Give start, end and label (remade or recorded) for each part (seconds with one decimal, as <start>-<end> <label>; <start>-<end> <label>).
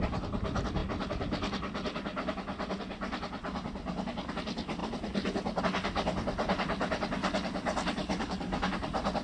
0.0-8.0 recorded; 8.0-8.7 remade; 8.7-9.2 recorded